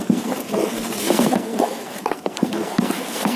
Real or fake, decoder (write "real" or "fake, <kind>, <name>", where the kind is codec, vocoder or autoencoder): fake, codec, SNAC